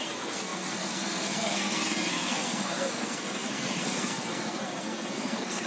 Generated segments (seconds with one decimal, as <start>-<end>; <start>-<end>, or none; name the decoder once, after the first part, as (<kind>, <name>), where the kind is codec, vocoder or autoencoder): 0.0-5.7 (codec, SNAC)